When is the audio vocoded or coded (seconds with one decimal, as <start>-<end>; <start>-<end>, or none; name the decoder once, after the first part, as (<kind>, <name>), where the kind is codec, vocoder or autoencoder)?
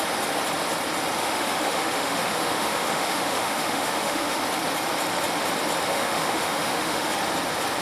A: 1.2-4.4 (autoencoder, DAC-VAE); 5.9-7.1